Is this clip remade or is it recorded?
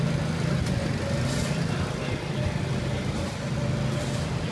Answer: recorded